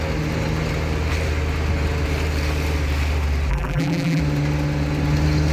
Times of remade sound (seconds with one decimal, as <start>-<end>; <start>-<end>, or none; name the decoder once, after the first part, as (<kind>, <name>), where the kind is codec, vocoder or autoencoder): 3.5-4.2 (vocoder, BigVGAN v2)